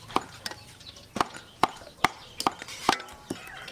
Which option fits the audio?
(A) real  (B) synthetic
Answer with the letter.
B